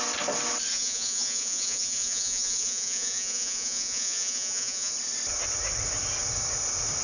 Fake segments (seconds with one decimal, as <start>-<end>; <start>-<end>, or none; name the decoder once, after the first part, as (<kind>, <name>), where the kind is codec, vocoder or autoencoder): 0.7-4.9 (vocoder, Vocos)

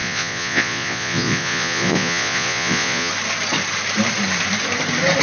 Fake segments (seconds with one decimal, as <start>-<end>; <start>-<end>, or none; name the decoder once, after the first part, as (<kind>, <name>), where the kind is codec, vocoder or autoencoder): 0.0-3.1 (vocoder, Vocos)

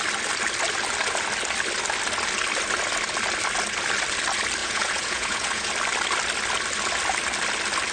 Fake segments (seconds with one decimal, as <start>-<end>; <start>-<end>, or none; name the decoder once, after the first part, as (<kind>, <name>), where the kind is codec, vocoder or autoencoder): 4.6-5.7 (vocoder, Vocos)

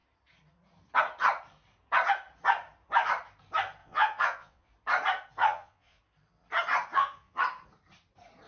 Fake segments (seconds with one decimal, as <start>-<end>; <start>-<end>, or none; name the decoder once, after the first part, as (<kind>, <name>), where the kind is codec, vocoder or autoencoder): 3.8-4.7 (vocoder, Vocos); 5.4-6.0; 6.9-7.4

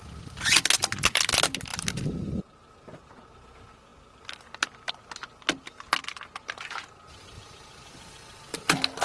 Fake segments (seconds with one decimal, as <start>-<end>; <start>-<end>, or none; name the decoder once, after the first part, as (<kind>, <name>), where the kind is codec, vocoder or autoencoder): none

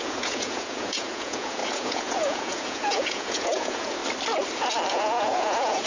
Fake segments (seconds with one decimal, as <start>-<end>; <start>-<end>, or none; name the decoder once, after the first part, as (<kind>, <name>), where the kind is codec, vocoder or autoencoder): 0.0-4.0 (vocoder, Vocos); 4.9-5.9

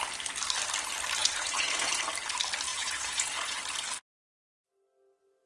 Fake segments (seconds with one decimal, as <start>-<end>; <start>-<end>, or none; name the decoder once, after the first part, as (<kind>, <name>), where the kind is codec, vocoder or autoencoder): 1.2-2.0 (vocoder, Vocos); 2.7-3.6

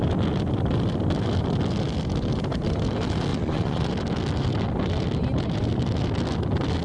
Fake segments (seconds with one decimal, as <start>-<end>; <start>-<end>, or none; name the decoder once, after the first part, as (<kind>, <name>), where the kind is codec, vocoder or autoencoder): 3.3-3.9 (vocoder, Vocos)